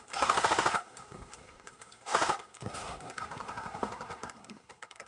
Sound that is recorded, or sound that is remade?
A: remade